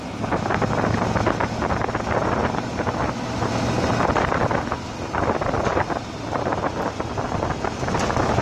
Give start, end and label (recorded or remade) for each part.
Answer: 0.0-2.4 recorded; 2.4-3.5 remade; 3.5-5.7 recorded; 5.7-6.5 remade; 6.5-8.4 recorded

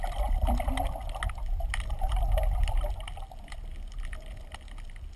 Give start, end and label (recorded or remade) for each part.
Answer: 0.0-5.2 recorded

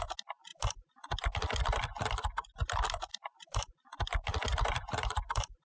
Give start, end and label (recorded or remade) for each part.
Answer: 0.0-0.5 recorded; 0.5-1.3 remade; 1.3-3.1 recorded; 3.1-3.7 remade; 3.7-4.5 recorded; 4.5-5.7 remade

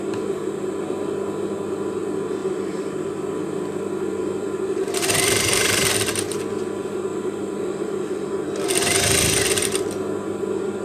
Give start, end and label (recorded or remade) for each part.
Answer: 0.0-2.4 recorded; 2.4-3.1 remade; 3.1-4.1 recorded; 4.1-6.4 remade; 6.4-7.1 recorded; 7.1-8.3 remade; 8.3-10.8 recorded